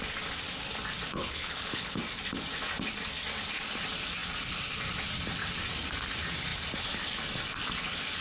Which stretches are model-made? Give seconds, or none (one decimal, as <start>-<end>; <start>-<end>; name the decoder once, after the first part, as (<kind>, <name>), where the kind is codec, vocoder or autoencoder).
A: 1.1-2.0 (codec, HILCodec)